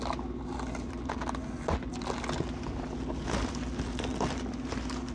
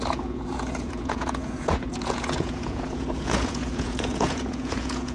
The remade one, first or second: second